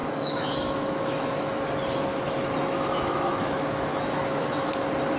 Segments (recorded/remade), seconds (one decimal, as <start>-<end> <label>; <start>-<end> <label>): 0.0-1.6 remade; 1.6-2.1 recorded; 2.1-4.7 remade; 4.7-5.2 recorded

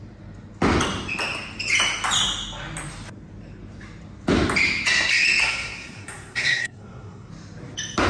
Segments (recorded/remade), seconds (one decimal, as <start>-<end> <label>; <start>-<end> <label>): 0.0-5.4 recorded; 5.4-7.3 remade; 7.3-8.1 recorded

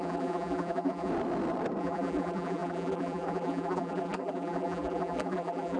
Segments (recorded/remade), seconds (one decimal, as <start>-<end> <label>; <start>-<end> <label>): 0.0-1.1 remade; 1.1-1.8 recorded; 1.8-5.8 remade